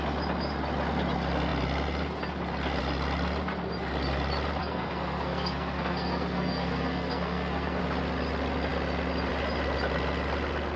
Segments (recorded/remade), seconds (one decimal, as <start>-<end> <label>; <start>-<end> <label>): 0.0-4.6 recorded; 4.6-7.8 remade; 7.8-10.8 recorded

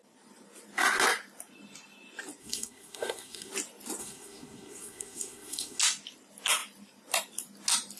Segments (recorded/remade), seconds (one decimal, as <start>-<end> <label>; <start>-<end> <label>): 0.0-2.4 recorded; 2.4-3.5 remade; 3.5-4.0 recorded; 4.0-5.8 remade; 5.8-8.0 recorded

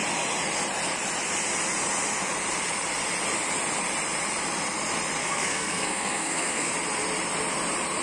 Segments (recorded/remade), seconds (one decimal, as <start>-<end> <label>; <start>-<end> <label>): 0.0-5.2 recorded; 5.2-6.7 remade; 6.7-8.0 recorded

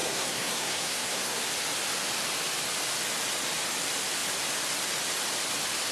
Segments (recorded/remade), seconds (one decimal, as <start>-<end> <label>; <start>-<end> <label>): 0.0-1.4 remade; 1.4-5.9 recorded

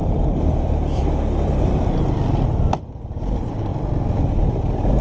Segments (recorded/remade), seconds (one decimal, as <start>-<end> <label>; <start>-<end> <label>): 0.0-5.0 recorded

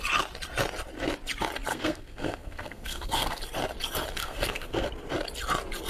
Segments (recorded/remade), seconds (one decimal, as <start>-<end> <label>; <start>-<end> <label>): 0.0-1.7 recorded; 1.7-3.4 remade; 3.4-4.2 recorded; 4.2-4.9 remade; 4.9-5.9 recorded

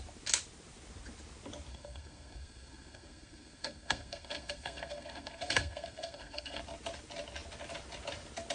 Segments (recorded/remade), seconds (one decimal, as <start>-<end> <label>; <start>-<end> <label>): 0.0-1.7 recorded; 1.7-6.6 remade; 6.6-8.5 recorded